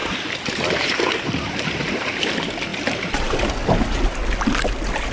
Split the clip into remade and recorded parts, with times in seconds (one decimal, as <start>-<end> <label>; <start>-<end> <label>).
0.0-2.2 remade; 2.2-2.7 recorded; 2.7-3.4 remade; 3.4-5.1 recorded